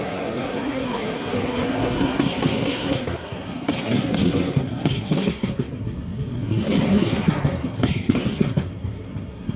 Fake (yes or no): yes